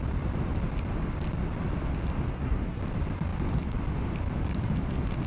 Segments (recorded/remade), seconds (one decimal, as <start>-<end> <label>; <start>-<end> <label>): 0.0-2.3 recorded; 2.3-2.8 remade; 2.8-5.3 recorded